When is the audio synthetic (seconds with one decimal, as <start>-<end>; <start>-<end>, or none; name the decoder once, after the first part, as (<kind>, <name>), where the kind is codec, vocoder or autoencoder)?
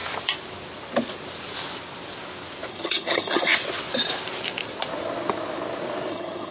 2.7-3.5 (vocoder, HiFi-GAN); 6.1-6.5